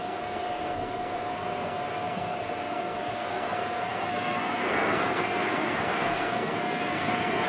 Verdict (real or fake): fake